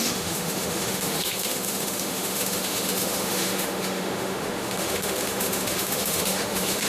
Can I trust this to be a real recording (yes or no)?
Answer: no